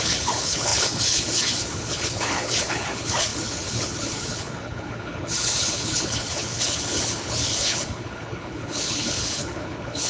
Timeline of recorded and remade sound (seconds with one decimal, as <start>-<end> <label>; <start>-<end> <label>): 0.0-10.1 remade